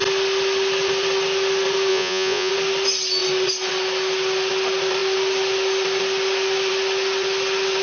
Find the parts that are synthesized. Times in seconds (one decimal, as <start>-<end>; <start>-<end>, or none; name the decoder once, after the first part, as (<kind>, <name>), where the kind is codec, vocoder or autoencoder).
1.9-2.5 (vocoder, Vocos)

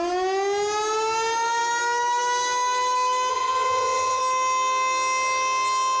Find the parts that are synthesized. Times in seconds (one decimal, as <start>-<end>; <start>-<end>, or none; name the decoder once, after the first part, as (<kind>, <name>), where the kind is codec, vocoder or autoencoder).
3.3-4.2 (vocoder, HiFi-GAN)

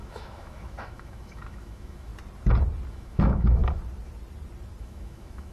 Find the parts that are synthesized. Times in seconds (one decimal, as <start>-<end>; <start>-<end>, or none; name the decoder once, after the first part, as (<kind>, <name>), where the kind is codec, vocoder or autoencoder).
0.0-2.1 (autoencoder, DAC-VAE); 2.9-3.6; 4.8-5.5

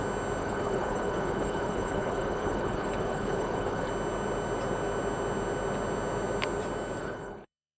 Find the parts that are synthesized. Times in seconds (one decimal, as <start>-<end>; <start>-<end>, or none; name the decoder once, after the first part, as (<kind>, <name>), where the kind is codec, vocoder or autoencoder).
0.4-3.9 (codec, HILCodec); 7.0-7.8

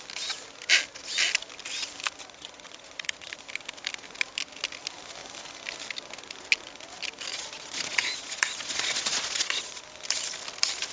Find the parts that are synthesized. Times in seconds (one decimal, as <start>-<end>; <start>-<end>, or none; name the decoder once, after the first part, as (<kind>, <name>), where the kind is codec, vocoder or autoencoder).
2.2-3.4 (vocoder, Vocos); 7.3-9.8